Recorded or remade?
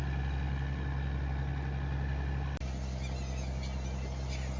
recorded